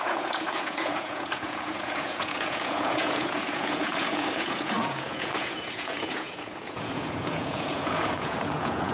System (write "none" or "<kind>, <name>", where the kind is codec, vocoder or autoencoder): vocoder, Vocos